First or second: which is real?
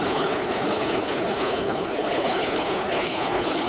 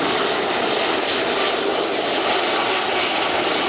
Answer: second